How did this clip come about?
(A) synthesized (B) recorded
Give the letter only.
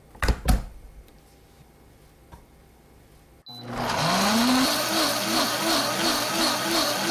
B